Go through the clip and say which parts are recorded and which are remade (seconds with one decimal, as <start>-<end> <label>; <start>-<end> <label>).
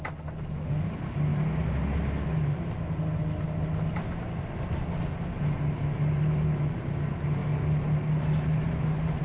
0.0-9.2 recorded